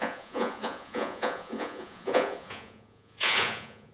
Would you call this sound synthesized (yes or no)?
yes